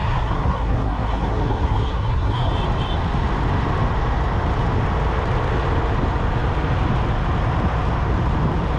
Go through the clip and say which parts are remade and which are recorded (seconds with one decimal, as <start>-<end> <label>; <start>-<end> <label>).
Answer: 0.0-2.5 remade; 2.5-8.8 recorded